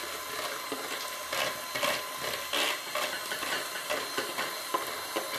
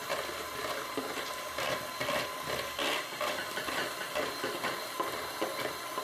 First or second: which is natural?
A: first